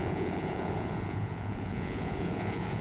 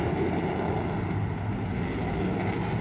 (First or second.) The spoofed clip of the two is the first